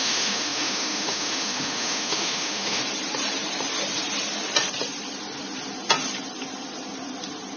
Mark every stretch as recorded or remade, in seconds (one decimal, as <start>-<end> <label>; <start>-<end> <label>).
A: 0.0-2.8 remade; 2.8-7.6 recorded